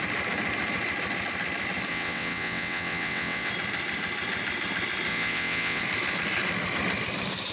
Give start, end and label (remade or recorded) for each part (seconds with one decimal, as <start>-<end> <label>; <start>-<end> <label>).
0.0-1.9 recorded; 1.9-3.5 remade; 3.5-5.1 recorded; 5.1-5.8 remade; 5.8-7.5 recorded